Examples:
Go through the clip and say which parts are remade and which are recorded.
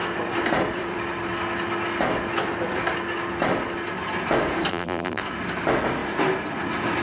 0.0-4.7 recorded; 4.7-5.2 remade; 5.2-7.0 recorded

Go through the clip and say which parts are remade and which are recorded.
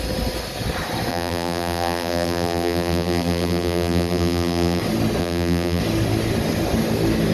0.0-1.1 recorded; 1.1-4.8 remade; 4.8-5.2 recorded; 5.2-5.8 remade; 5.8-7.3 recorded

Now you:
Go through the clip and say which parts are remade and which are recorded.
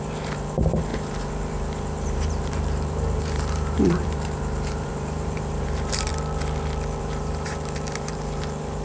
0.0-6.1 remade; 6.1-7.0 recorded; 7.0-8.8 remade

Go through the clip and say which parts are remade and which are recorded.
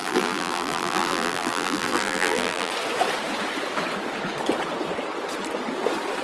0.0-2.7 remade; 2.7-6.2 recorded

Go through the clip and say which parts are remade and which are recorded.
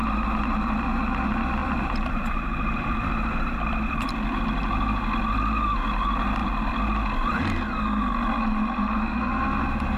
0.0-1.6 recorded; 1.6-4.4 remade; 4.4-6.4 recorded; 6.4-7.4 remade; 7.4-10.0 recorded